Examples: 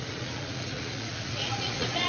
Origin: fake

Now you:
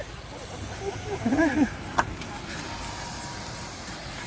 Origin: real